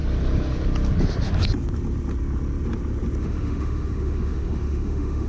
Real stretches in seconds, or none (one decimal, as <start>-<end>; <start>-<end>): 0.0-3.2